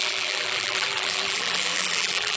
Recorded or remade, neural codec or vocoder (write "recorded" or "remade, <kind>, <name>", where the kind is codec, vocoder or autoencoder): remade, vocoder, BigVGAN v2